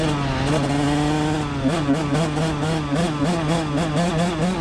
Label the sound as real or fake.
real